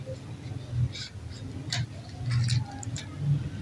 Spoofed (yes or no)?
no